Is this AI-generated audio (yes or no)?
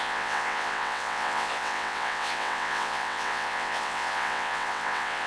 yes